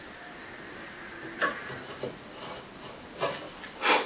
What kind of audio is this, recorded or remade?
recorded